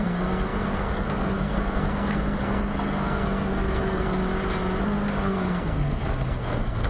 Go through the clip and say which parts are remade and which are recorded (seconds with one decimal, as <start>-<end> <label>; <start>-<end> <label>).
0.0-4.2 remade; 4.2-5.2 recorded; 5.2-6.9 remade